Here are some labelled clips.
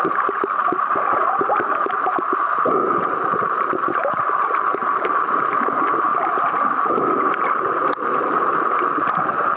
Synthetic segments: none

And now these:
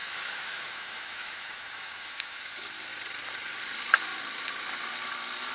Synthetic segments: 0.0-2.5 (autoencoder, DAC-VAE)

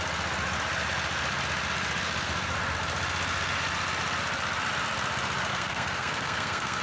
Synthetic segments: 5.5-6.8 (codec, SNAC)

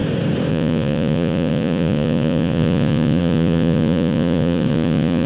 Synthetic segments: 0.5-5.3 (vocoder, Vocos)

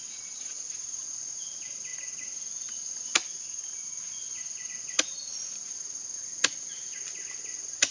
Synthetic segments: none